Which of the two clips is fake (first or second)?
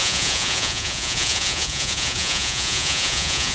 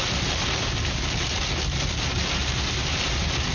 first